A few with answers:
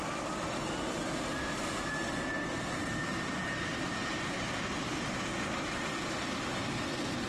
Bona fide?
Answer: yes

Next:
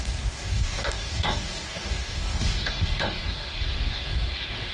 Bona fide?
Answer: no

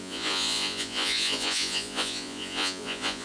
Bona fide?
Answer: no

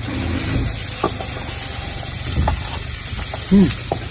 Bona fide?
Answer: yes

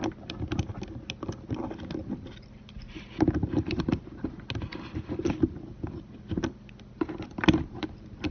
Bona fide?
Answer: yes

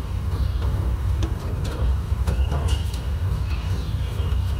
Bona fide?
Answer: no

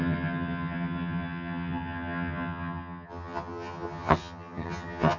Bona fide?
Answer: no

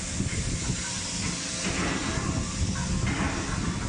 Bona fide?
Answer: yes